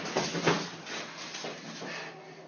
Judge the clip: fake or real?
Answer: real